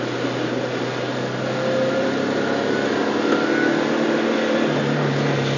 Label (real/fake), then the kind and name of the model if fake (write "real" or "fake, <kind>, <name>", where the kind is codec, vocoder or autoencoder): real